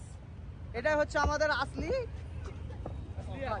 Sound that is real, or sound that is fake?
real